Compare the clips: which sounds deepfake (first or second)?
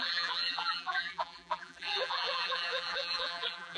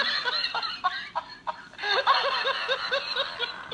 first